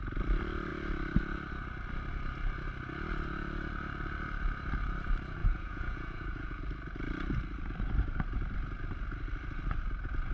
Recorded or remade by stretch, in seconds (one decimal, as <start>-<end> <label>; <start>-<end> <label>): 0.0-5.4 recorded; 5.4-6.6 remade; 6.6-10.3 recorded